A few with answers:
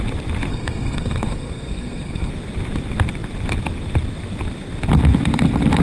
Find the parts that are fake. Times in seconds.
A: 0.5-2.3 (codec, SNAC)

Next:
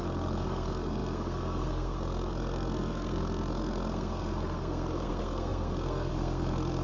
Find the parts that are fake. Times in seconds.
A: 0.0-6.8 (codec, SNAC)

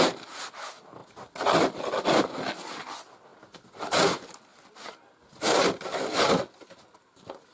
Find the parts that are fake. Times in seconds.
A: none

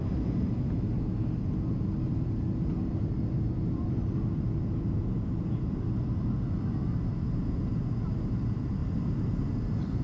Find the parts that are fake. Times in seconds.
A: 0.0-0.9 (vocoder, BigVGAN v2); 8.8-9.5

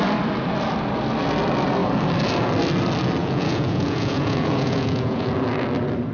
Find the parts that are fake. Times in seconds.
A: 3.2-5.3 (vocoder, Vocos)

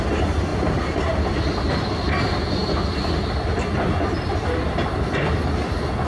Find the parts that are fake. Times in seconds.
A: none